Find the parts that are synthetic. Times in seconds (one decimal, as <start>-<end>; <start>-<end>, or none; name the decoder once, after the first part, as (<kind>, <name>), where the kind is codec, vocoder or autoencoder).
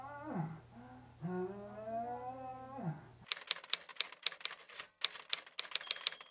none